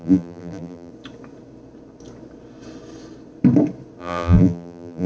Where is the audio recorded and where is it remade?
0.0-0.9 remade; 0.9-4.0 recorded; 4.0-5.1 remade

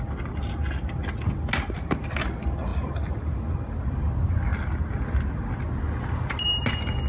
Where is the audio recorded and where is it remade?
0.0-7.1 recorded

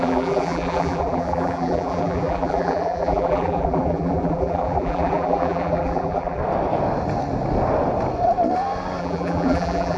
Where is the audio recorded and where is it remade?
0.0-6.4 remade; 6.4-9.0 recorded; 9.0-10.0 remade